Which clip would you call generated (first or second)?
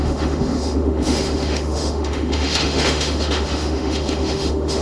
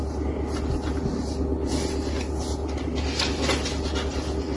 first